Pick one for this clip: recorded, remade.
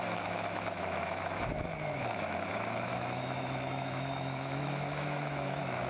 remade